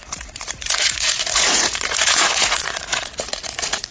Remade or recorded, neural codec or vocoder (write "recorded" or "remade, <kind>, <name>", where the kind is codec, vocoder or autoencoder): remade, vocoder, Vocos